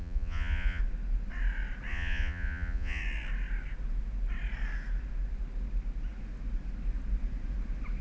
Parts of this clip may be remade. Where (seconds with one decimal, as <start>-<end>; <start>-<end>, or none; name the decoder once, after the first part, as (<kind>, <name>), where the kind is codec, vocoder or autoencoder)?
0.0-0.8 (vocoder, Vocos); 1.9-3.0

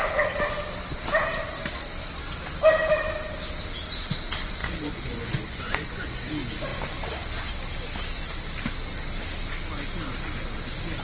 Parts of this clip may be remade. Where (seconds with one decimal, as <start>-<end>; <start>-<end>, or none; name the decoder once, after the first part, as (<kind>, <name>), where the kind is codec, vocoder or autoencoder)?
4.6-6.3 (vocoder, Vocos)